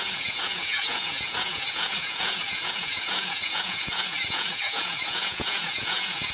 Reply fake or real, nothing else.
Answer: fake